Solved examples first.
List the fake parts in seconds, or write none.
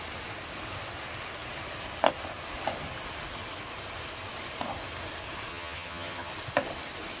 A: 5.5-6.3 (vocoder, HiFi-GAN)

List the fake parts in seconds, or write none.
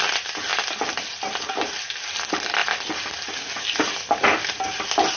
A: none